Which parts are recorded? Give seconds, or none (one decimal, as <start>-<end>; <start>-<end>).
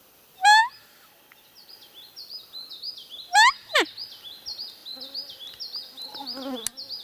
0.0-7.0